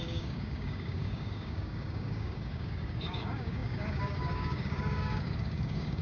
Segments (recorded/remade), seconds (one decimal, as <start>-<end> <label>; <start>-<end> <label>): 0.0-6.0 remade